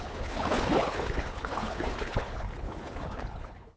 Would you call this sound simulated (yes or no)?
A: yes